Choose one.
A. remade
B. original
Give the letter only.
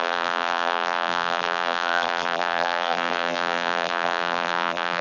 A